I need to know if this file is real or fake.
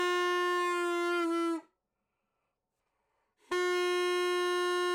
real